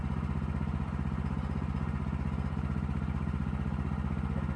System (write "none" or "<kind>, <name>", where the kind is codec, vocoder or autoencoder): none